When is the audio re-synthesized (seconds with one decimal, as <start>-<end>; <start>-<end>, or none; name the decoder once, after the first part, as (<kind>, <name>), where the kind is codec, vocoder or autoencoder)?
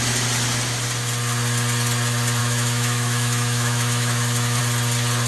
2.4-4.6 (autoencoder, DAC-VAE)